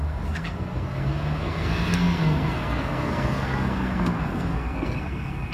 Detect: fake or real fake